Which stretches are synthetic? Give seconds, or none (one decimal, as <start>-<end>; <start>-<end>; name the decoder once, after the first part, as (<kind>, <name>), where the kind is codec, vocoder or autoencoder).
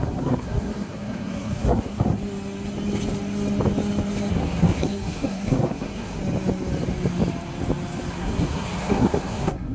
0.0-2.2 (codec, SNAC); 4.3-6.2; 8.1-9.7